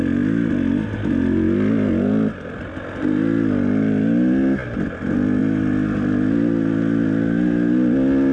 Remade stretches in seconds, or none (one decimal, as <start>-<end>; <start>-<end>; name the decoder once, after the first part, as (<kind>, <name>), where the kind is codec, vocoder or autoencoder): none